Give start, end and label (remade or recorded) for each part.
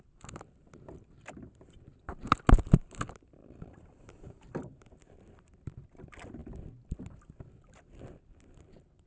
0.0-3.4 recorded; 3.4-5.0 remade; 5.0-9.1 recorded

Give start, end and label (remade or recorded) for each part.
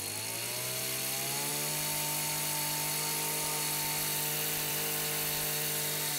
0.0-6.2 recorded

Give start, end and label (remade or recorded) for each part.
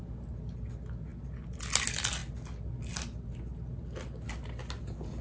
0.0-5.2 recorded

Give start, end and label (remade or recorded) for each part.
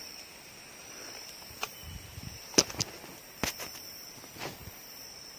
0.0-2.1 remade; 2.1-5.4 recorded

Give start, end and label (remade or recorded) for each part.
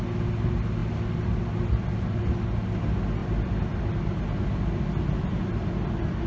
0.0-3.2 recorded; 3.2-4.2 remade; 4.2-6.3 recorded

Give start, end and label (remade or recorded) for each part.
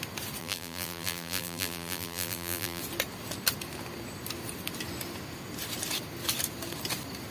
0.0-0.4 recorded; 0.4-2.8 remade; 2.8-7.3 recorded